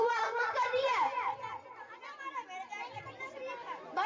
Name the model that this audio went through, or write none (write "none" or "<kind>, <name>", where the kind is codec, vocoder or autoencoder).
none